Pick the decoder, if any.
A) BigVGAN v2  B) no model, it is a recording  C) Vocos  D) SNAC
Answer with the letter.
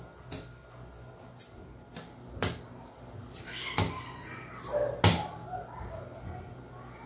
B